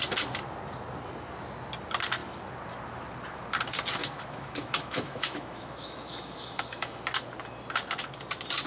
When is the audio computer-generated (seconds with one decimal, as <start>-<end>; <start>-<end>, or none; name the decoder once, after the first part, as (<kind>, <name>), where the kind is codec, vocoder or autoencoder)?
4.0-7.0 (autoencoder, DAC-VAE)